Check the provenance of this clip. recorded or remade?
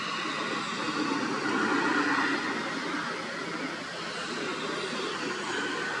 recorded